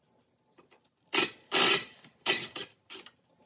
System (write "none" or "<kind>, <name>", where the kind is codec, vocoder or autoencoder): vocoder, BigVGAN v2